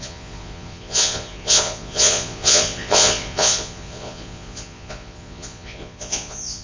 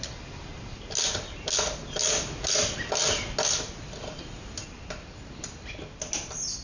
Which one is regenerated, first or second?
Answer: first